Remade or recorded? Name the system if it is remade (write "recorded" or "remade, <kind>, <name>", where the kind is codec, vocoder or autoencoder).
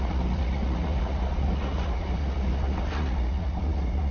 remade, vocoder, Vocos